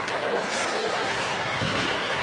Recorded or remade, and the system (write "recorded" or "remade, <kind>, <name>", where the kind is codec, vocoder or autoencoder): remade, codec, SNAC